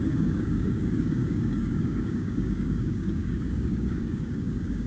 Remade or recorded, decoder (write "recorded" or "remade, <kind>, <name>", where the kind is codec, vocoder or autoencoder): remade, codec, DAC